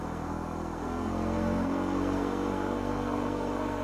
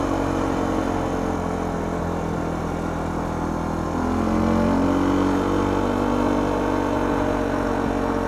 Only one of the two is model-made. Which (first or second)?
first